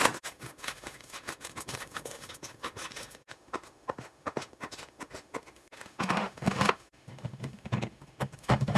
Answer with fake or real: fake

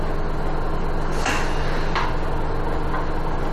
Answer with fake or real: real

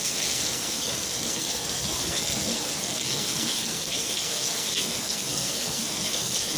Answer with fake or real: fake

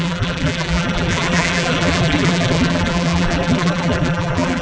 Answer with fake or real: fake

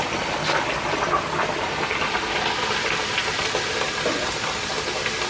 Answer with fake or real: real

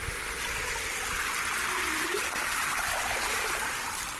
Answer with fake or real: real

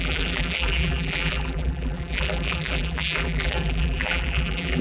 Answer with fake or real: fake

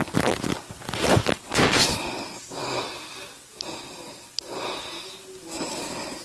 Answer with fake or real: real